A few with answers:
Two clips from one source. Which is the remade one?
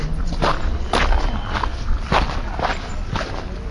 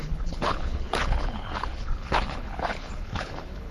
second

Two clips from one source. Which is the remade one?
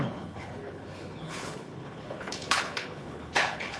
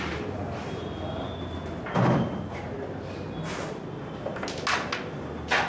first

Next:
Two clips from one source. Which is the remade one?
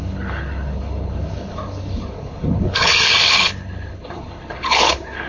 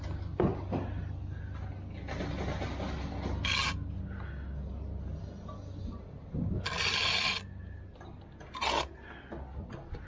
first